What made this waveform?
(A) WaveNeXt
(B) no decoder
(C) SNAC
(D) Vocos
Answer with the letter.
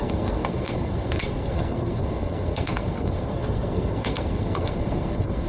C